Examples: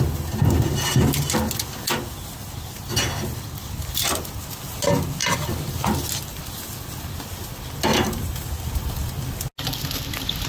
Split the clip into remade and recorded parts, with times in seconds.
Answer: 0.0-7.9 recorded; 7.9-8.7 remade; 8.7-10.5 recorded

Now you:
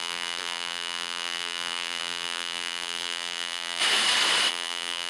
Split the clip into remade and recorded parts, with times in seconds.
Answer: 0.0-3.8 remade; 3.8-4.5 recorded; 4.5-5.1 remade

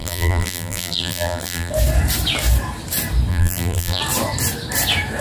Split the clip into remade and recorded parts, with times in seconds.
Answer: 0.0-1.7 remade; 1.7-3.3 recorded; 3.3-4.0 remade; 4.0-5.2 recorded

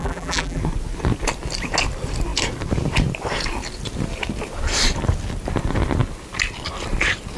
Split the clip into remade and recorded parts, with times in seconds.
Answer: 0.0-0.6 remade; 0.6-7.4 recorded

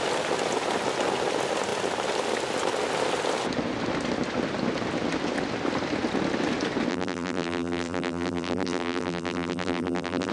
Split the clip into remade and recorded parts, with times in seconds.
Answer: 0.0-6.9 recorded; 6.9-10.3 remade